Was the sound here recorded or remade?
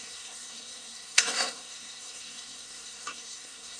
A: remade